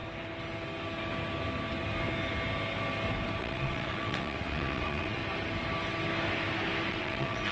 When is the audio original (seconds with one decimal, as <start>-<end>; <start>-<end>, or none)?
0.0-3.4; 5.2-6.9